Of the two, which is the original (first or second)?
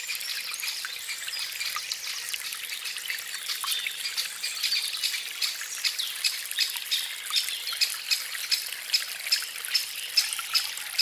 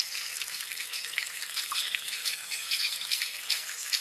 first